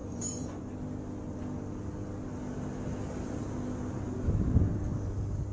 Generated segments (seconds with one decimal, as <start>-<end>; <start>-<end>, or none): 0.0-0.7

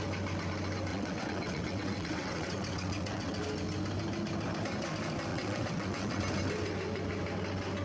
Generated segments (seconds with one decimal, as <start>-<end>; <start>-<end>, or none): 0.9-3.4; 5.3-6.2

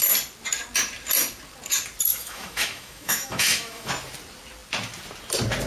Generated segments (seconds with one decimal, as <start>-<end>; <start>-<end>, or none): 2.1-3.9

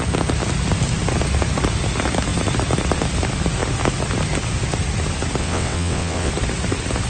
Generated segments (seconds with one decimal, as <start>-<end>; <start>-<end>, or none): 5.4-6.3

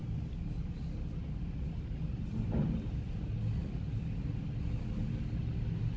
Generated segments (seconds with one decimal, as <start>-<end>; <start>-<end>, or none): 0.0-3.1

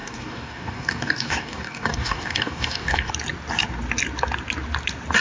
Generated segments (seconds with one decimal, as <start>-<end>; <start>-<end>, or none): 0.0-3.1

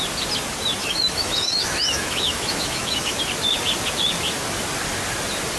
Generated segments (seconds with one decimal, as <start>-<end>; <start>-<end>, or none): 0.8-3.2